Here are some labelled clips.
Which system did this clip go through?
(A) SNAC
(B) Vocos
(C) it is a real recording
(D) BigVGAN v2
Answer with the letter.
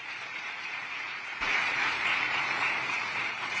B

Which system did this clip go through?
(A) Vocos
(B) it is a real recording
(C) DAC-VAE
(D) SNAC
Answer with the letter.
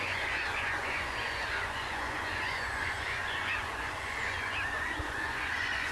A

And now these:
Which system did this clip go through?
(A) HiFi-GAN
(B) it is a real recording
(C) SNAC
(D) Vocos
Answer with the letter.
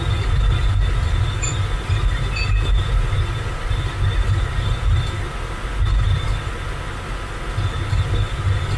B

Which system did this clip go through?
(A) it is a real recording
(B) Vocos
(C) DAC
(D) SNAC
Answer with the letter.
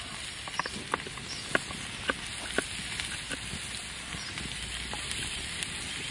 A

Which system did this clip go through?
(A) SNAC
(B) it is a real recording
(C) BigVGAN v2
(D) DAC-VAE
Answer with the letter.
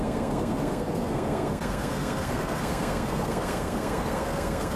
A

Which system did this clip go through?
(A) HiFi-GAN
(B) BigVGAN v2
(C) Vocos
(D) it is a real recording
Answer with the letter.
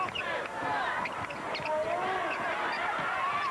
D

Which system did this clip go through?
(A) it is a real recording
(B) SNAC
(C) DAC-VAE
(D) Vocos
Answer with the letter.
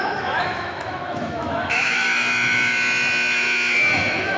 C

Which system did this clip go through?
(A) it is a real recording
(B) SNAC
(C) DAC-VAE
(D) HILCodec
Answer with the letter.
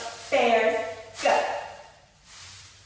A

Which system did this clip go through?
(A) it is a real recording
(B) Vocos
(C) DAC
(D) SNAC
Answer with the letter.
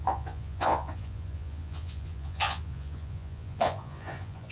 B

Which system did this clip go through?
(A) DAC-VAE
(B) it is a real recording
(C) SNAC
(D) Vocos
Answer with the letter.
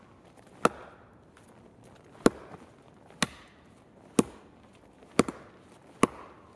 B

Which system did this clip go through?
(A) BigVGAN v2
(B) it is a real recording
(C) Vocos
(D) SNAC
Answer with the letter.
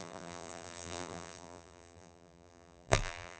A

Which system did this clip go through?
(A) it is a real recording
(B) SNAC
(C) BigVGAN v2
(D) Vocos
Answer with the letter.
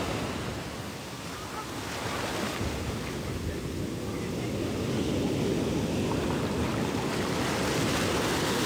A